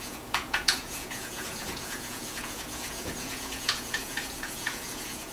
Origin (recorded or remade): remade